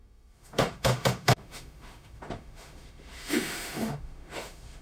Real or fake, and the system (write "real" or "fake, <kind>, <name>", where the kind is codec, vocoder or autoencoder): fake, autoencoder, DAC-VAE